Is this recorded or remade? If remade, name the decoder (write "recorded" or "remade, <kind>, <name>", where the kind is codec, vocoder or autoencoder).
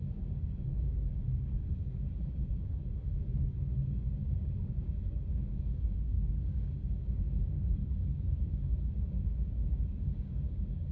remade, codec, DAC